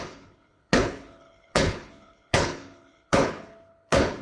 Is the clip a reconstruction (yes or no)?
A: yes